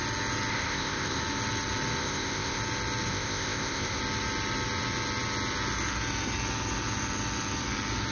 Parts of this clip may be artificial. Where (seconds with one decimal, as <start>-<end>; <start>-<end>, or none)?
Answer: 0.5-1.2; 2.0-2.6; 3.1-4.0

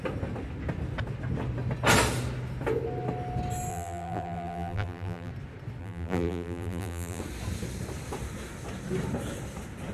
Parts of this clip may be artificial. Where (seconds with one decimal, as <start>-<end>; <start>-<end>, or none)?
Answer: 3.7-5.3; 5.8-7.2